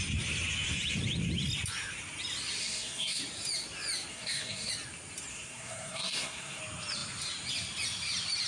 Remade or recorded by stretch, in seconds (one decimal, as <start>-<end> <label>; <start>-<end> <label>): 0.0-2.6 recorded; 2.6-3.2 remade; 3.2-4.1 recorded; 4.1-4.7 remade; 4.7-5.3 recorded; 5.3-6.6 remade; 6.6-8.5 recorded